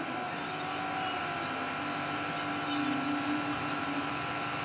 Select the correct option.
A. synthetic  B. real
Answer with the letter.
B